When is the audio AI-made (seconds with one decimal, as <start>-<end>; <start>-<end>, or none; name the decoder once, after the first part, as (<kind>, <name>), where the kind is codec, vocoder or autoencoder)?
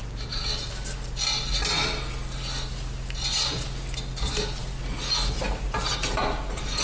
none